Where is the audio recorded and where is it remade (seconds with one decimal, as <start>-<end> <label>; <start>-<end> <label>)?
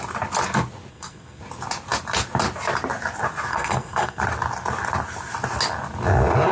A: 0.0-0.9 recorded; 0.9-1.4 remade; 1.4-3.5 recorded; 3.5-4.2 remade; 4.2-6.5 recorded